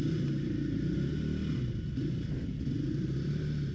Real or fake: real